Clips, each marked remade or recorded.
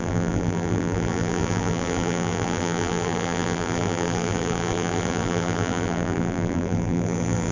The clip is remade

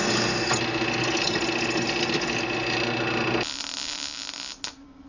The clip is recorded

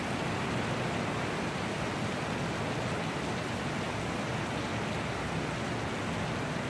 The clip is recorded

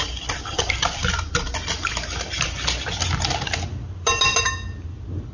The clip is recorded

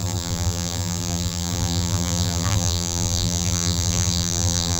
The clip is remade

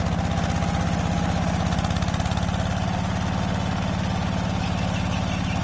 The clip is recorded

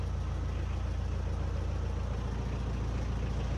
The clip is recorded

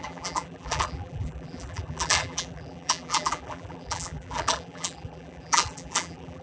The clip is remade